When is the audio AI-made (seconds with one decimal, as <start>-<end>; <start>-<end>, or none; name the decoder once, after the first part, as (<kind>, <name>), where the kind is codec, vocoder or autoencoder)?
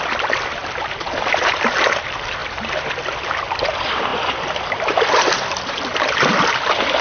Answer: 0.0-0.6 (vocoder, BigVGAN v2); 1.3-7.0